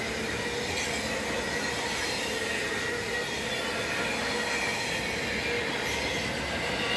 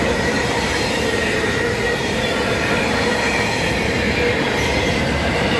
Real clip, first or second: first